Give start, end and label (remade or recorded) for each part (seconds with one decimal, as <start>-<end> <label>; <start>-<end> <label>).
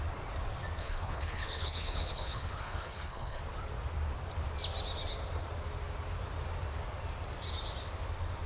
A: 0.0-0.8 recorded; 0.8-3.4 remade; 3.4-8.5 recorded